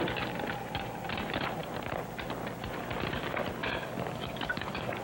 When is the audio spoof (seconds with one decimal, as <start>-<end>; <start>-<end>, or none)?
3.6-5.0